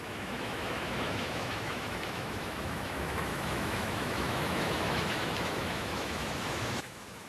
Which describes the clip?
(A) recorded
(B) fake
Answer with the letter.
B